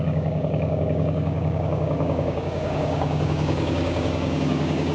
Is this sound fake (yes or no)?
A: yes